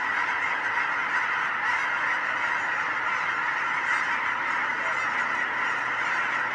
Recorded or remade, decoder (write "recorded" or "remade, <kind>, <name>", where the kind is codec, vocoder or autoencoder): recorded